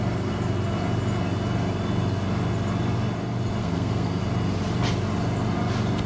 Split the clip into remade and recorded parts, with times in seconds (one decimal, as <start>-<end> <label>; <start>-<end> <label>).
0.0-3.6 recorded; 3.6-4.2 remade; 4.2-6.1 recorded